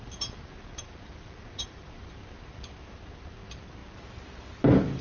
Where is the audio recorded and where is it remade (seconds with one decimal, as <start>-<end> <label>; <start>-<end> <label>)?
0.0-3.8 remade; 3.8-5.0 recorded